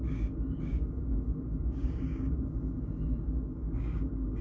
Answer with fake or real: fake